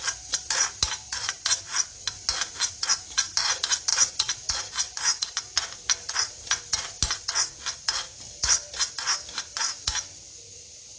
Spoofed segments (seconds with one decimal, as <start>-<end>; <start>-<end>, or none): none